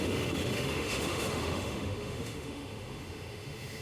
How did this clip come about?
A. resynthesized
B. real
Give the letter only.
A